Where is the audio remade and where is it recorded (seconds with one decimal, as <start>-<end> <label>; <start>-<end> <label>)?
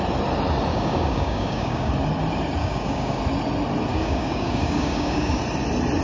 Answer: 0.0-0.7 recorded; 0.7-1.9 remade; 1.9-2.6 recorded; 2.6-3.2 remade; 3.2-3.9 recorded; 3.9-5.4 remade; 5.4-6.0 recorded